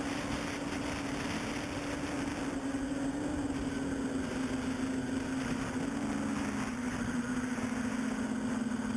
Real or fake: real